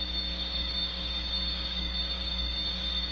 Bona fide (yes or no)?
no